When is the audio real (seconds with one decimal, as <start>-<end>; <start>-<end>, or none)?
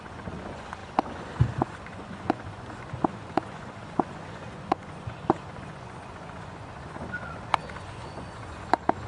none